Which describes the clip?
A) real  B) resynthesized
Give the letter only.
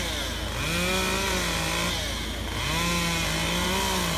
A